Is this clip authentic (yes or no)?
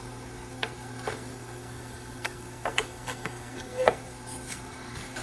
no